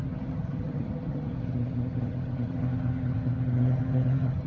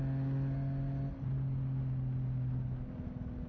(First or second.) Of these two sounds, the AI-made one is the first